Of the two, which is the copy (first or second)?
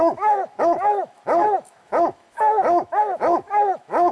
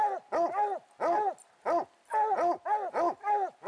first